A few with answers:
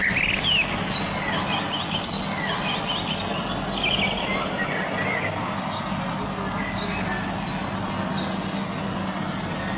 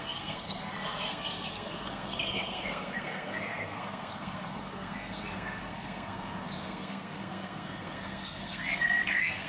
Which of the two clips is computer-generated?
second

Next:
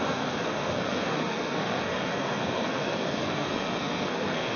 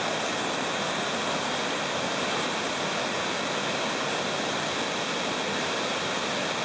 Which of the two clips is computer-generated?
first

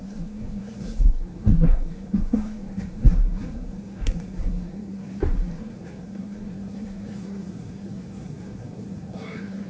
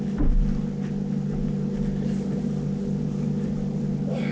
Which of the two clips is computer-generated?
first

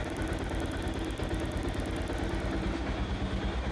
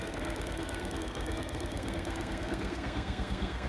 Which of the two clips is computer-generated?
second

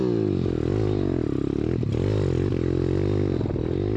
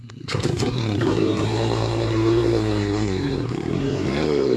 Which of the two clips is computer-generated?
second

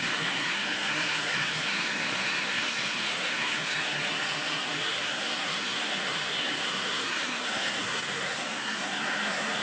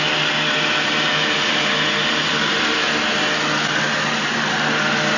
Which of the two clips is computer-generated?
first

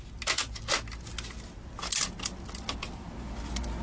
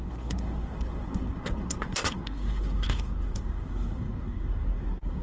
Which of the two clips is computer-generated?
second